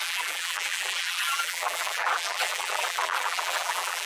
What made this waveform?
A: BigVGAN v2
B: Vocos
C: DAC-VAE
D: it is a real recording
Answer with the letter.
A